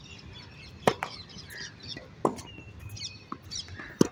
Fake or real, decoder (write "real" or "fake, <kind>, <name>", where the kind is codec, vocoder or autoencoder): real